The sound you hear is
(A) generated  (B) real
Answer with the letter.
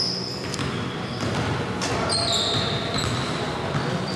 B